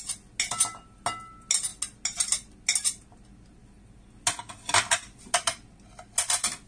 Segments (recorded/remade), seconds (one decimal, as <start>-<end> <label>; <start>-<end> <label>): 0.0-6.7 recorded